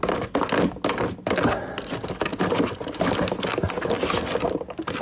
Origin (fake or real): real